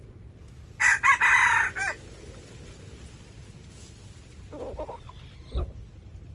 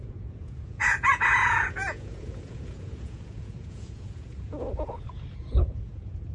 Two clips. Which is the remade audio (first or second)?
second